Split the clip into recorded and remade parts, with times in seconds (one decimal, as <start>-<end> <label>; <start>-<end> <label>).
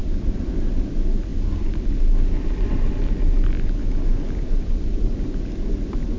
0.0-6.2 recorded